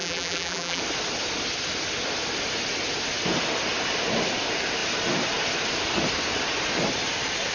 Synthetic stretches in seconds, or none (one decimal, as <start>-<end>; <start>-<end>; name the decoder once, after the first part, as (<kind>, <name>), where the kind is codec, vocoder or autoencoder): 0.0-0.8 (vocoder, BigVGAN v2)